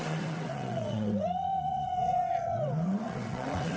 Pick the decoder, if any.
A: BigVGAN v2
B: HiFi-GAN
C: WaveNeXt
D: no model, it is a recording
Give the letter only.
C